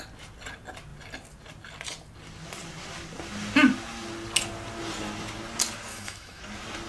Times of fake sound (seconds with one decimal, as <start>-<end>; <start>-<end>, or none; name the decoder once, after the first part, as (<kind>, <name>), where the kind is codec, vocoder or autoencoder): 5.9-6.4 (autoencoder, DAC-VAE)